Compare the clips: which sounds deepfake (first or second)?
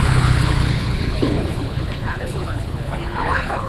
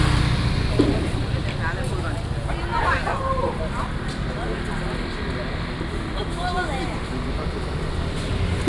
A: first